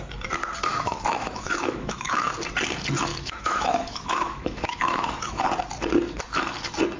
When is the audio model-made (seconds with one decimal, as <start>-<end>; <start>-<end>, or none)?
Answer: 0.7-2.3; 3.1-5.4